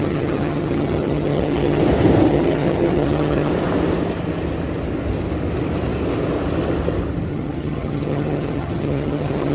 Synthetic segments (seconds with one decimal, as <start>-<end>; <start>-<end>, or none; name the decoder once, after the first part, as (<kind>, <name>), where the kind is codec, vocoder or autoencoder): 0.0-1.8 (vocoder, HiFi-GAN); 2.3-3.5; 7.3-9.5